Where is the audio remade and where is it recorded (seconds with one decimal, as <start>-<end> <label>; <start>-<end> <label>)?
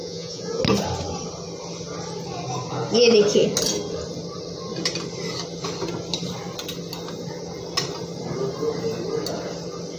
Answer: 0.0-0.6 remade; 0.6-10.0 recorded